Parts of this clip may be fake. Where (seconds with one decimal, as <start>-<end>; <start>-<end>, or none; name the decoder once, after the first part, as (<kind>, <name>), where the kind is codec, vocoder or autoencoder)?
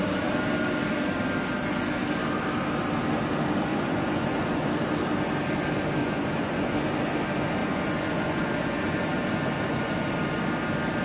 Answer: 3.7-4.7 (vocoder, Vocos); 6.0-6.7; 7.6-10.1